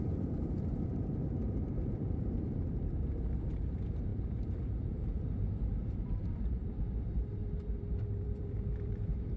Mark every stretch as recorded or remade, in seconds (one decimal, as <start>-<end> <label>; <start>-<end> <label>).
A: 0.0-9.4 remade